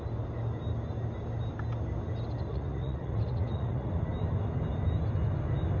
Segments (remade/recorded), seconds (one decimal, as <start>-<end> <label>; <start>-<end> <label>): 0.0-2.5 recorded; 2.5-3.9 remade; 3.9-5.8 recorded